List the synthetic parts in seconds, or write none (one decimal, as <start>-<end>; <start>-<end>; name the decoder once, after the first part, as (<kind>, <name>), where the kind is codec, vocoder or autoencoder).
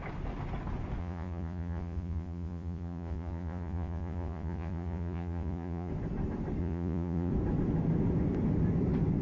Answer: 1.0-5.9 (vocoder, Vocos); 6.6-7.3